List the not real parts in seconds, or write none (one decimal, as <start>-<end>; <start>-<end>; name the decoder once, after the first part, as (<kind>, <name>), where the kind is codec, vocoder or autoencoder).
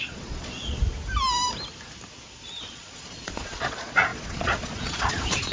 0.0-0.8 (vocoder, Vocos); 2.7-5.5